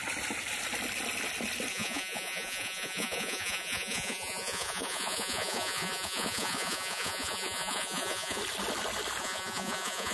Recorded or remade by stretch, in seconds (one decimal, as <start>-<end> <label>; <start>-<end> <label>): 0.0-1.7 recorded; 1.7-8.4 remade; 8.4-9.2 recorded; 9.2-10.1 remade